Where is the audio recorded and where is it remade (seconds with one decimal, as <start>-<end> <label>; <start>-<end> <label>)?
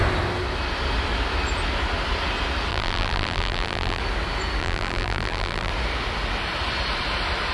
0.0-2.7 recorded; 2.7-4.0 remade; 4.0-4.6 recorded; 4.6-5.7 remade; 5.7-7.5 recorded